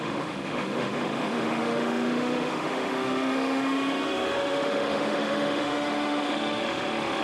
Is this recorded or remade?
remade